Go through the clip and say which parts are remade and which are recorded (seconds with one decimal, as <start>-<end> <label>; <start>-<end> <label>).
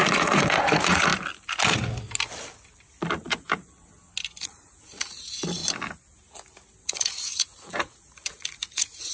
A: 0.0-1.1 remade; 1.1-4.4 recorded; 4.4-5.6 remade; 5.6-6.8 recorded; 6.8-9.1 remade